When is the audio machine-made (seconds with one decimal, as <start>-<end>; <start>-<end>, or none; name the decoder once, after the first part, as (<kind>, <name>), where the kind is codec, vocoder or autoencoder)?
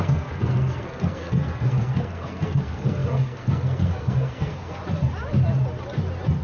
0.0-4.8 (codec, SNAC)